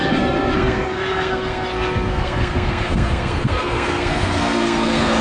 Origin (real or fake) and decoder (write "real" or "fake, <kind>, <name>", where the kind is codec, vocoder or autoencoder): fake, codec, SNAC